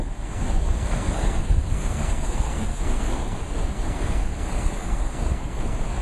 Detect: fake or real fake